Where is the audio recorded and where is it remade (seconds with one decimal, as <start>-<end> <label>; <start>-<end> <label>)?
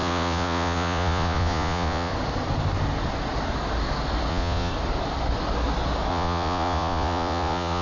0.0-2.1 remade; 2.1-4.3 recorded; 4.3-4.7 remade; 4.7-6.1 recorded; 6.1-7.8 remade